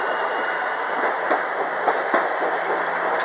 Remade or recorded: recorded